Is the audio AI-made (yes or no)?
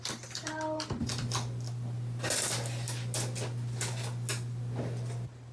no